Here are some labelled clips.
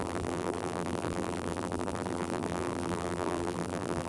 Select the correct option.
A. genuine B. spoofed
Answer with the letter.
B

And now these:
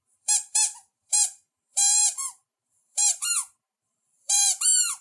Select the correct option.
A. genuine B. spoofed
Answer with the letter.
B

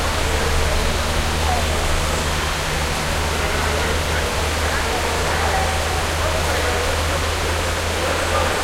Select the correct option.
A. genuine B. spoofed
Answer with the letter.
A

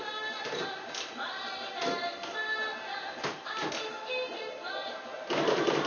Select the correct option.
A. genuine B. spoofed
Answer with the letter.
A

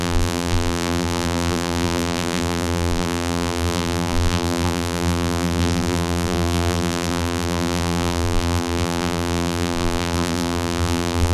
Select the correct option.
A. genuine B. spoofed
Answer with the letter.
B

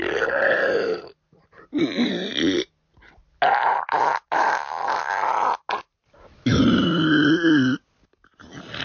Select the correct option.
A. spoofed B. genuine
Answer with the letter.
B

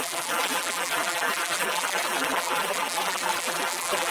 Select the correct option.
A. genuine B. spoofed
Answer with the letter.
B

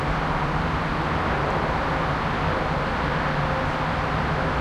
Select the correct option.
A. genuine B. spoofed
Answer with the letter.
A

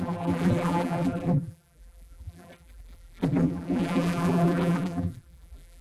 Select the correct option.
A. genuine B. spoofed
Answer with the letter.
B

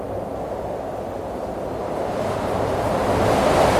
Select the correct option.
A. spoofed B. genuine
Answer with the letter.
B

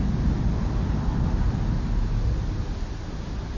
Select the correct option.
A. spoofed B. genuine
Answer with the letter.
B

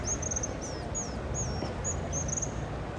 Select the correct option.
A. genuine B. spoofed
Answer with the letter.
A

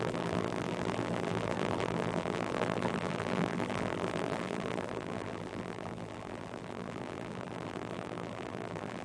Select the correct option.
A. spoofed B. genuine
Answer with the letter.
A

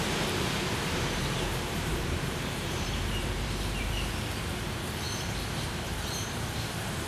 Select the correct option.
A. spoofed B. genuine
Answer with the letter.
A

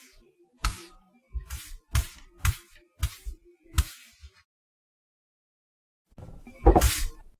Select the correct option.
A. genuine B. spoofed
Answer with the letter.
B